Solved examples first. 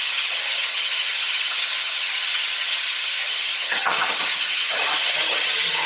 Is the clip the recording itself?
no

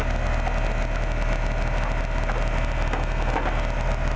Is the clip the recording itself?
yes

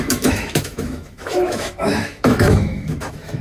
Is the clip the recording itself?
no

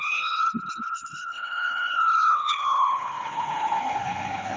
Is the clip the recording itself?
no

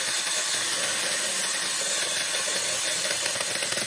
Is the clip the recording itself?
yes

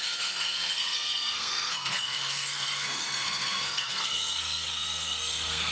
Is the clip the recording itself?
no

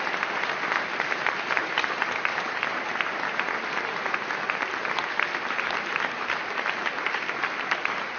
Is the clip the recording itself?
yes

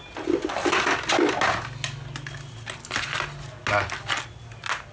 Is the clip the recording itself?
yes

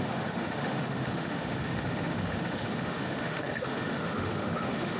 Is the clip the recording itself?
no